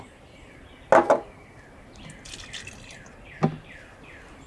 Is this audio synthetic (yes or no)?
no